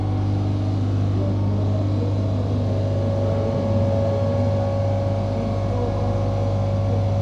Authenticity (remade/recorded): recorded